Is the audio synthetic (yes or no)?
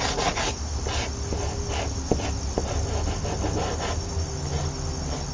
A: no